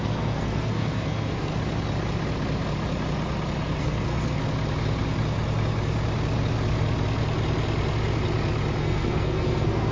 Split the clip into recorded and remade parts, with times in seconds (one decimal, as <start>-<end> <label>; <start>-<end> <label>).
0.0-1.5 remade; 1.5-3.8 recorded; 3.8-4.4 remade; 4.4-8.8 recorded; 8.8-9.9 remade